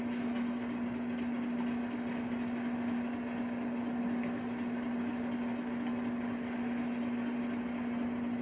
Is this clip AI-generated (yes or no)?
no